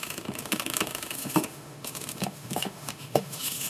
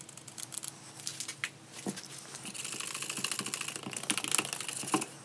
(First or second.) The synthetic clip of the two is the first